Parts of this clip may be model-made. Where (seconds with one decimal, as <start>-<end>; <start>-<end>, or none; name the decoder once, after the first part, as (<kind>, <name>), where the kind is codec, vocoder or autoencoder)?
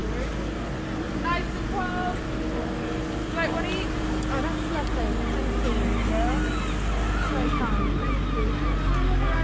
none